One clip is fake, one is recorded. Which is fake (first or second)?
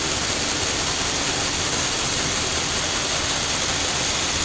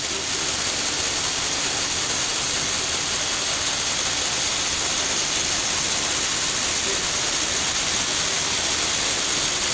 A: first